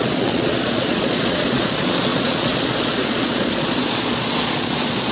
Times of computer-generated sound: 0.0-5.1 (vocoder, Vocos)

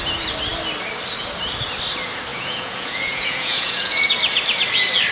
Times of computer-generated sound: 2.3-4.1 (vocoder, Vocos)

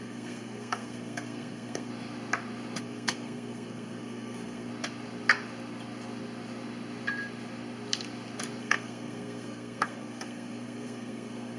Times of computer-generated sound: 0.0-1.9 (codec, SNAC); 2.8-4.7; 8.6-11.6